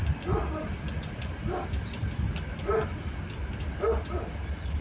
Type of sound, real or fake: real